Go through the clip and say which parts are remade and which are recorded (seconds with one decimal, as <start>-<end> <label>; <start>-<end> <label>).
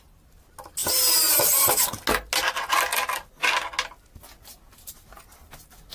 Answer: 0.0-5.9 recorded